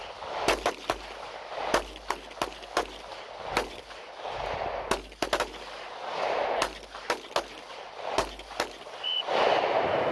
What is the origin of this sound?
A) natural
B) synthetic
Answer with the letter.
A